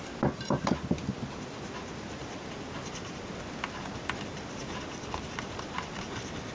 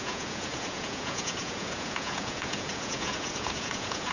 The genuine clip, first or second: first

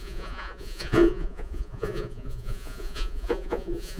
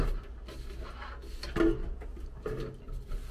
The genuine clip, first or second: second